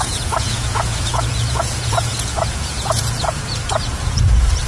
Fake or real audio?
fake